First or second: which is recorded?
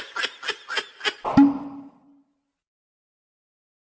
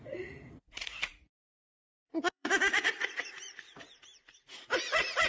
first